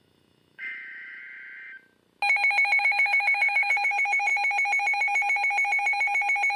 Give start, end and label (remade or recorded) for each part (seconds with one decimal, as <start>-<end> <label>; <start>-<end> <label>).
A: 0.0-1.2 remade; 1.2-2.8 recorded; 2.8-4.3 remade; 4.3-6.6 recorded